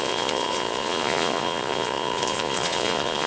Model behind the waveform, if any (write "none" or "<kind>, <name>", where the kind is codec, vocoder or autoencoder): vocoder, Vocos